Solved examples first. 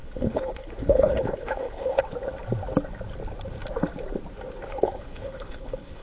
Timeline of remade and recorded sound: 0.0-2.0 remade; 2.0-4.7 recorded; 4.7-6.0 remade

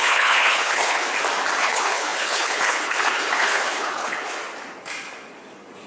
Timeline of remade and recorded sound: 0.0-1.1 remade; 1.1-1.6 recorded; 1.6-4.4 remade; 4.4-5.9 recorded

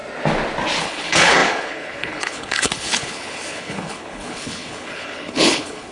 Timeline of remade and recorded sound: 0.0-0.8 recorded; 0.8-5.9 remade

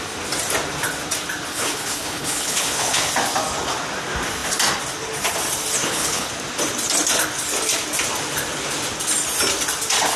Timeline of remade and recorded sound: 0.0-1.5 recorded; 1.5-3.1 remade; 3.1-5.8 recorded; 5.8-6.3 remade; 6.3-10.2 recorded